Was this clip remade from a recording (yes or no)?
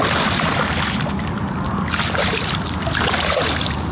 no